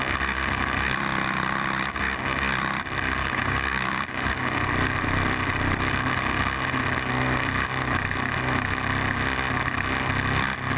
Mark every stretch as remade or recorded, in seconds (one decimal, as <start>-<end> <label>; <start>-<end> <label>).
0.0-3.2 recorded; 3.2-4.3 remade; 4.3-10.8 recorded